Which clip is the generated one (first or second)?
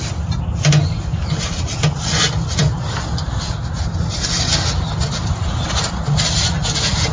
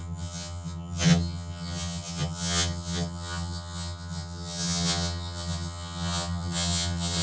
second